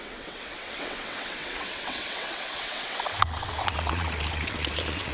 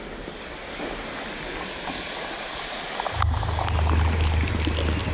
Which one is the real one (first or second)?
second